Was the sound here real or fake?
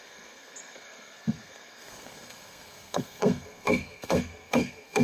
fake